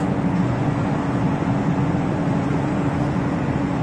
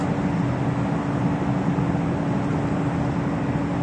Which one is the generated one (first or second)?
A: first